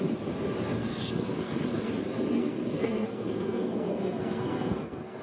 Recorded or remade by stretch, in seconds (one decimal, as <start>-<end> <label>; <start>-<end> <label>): 0.0-0.8 recorded; 0.8-1.9 remade; 1.9-2.4 recorded; 2.4-5.2 remade